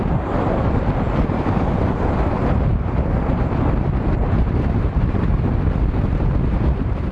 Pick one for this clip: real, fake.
fake